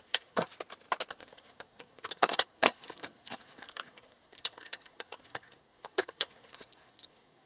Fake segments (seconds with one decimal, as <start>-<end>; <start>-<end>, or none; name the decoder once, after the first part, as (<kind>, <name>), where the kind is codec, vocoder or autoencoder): 0.0-0.5 (codec, SNAC); 1.1-7.5